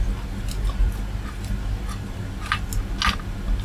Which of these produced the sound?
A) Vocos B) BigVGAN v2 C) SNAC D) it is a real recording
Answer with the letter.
D